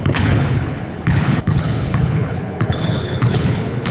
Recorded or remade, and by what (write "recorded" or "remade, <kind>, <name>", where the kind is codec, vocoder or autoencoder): remade, codec, HILCodec